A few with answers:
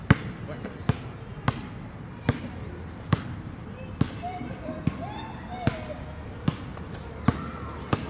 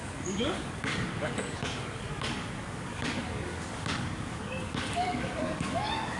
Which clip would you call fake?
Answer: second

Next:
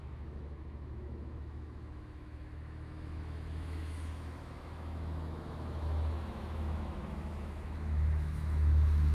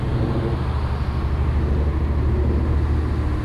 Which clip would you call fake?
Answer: first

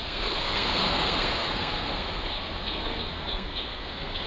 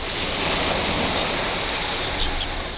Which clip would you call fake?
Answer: first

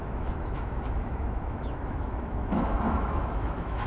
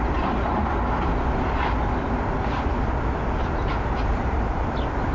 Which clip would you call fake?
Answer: first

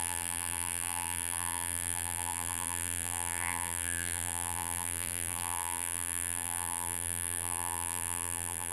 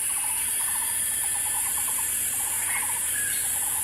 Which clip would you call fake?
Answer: first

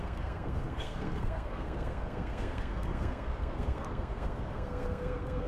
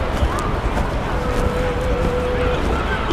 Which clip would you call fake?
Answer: first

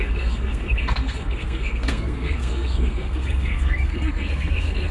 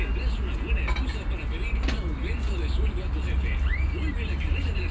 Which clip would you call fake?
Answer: first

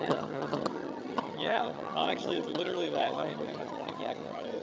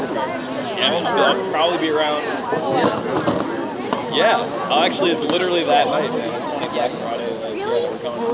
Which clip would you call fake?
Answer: first